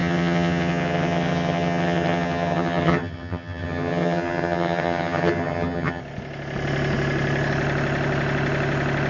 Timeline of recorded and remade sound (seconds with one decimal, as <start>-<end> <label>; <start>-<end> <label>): 0.0-6.0 remade; 6.0-9.1 recorded